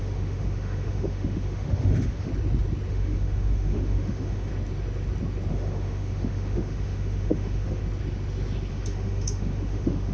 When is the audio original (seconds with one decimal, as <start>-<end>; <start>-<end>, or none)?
2.3-2.9; 4.5-5.5; 7.8-8.7